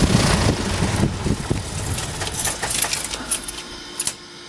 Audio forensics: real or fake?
real